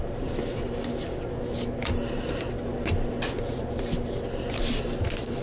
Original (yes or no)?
yes